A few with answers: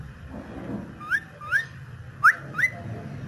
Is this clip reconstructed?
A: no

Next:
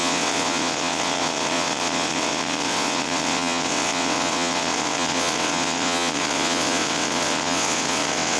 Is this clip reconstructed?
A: yes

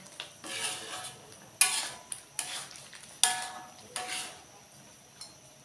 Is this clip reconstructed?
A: no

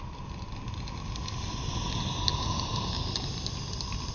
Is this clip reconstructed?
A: no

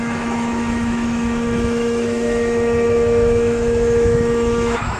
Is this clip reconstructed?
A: yes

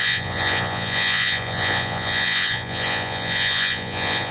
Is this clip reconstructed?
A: yes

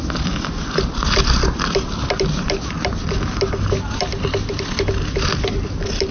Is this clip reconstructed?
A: no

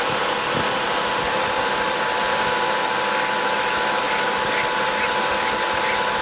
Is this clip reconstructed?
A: no